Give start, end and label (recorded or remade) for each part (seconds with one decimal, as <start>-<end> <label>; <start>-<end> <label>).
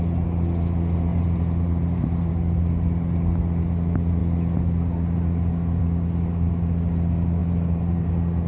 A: 0.0-1.1 recorded; 1.1-2.3 remade; 2.3-7.4 recorded; 7.4-8.1 remade; 8.1-8.5 recorded